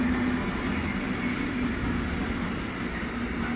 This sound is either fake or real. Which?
real